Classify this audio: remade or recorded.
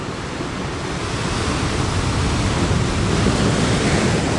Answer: recorded